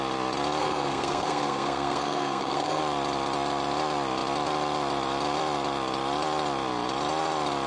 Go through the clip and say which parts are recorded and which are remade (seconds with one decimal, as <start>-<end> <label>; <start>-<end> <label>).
0.0-0.6 recorded; 0.6-2.8 remade; 2.8-7.7 recorded